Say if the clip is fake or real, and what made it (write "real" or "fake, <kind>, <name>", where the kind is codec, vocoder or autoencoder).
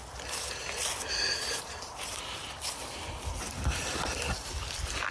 real